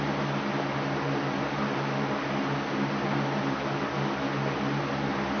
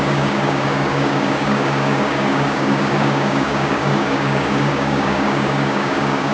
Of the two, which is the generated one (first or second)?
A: second